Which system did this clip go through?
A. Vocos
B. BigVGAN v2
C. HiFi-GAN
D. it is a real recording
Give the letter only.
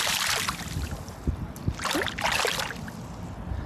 D